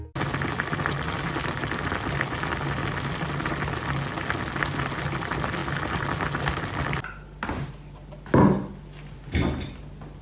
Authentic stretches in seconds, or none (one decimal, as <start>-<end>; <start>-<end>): 0.0-10.2